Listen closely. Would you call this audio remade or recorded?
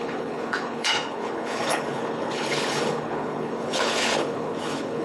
remade